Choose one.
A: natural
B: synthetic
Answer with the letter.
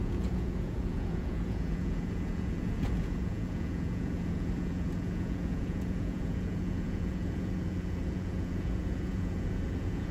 B